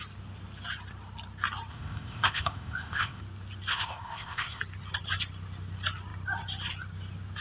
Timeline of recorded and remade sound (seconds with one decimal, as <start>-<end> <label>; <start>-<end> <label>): 0.0-1.7 recorded; 1.7-3.2 remade; 3.2-3.7 recorded; 3.7-4.6 remade; 4.6-7.4 recorded